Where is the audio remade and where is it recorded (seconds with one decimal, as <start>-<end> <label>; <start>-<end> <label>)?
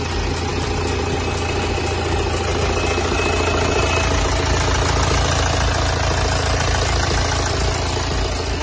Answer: 0.0-8.6 recorded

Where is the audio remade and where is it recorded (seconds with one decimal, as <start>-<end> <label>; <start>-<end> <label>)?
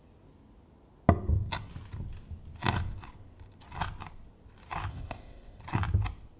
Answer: 0.0-4.9 recorded; 4.9-5.6 remade; 5.6-6.4 recorded